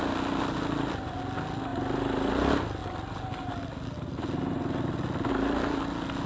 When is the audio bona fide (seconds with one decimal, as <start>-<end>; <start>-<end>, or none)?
0.0-6.3